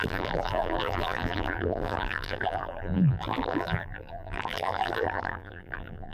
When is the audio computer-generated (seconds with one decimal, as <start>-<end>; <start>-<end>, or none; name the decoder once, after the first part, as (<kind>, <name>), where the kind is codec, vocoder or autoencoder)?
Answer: 0.0-6.1 (vocoder, BigVGAN v2)